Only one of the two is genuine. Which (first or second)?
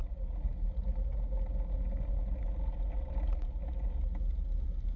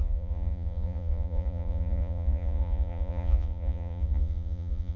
first